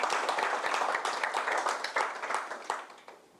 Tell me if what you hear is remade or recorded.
recorded